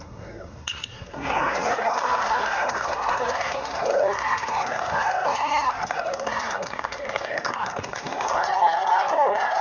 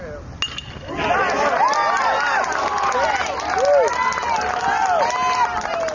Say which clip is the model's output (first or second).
first